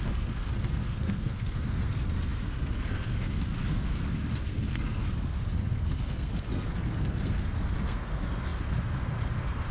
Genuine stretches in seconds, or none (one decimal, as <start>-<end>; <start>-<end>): none